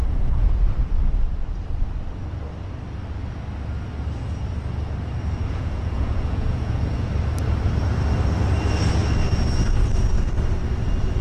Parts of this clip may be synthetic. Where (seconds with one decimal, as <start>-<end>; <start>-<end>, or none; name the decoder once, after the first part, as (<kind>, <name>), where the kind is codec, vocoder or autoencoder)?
0.0-0.5 (vocoder, Vocos); 5.4-7.1